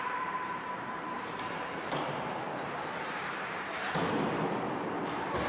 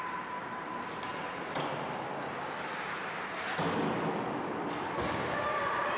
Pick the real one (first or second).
second